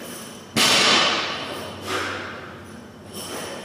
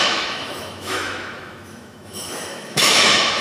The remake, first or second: second